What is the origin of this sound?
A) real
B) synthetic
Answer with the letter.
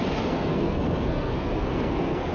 B